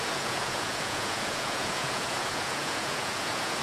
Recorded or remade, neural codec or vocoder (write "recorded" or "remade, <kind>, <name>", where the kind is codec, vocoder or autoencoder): remade, vocoder, Vocos